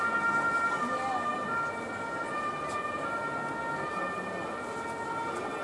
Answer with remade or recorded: recorded